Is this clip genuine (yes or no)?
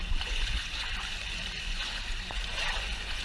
no